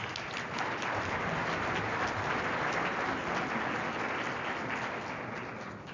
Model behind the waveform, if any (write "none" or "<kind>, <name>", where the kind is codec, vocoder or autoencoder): none